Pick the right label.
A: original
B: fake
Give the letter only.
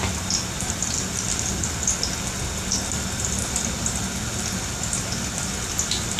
A